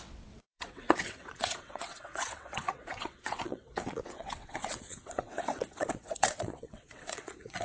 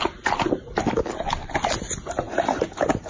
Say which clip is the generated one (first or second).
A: first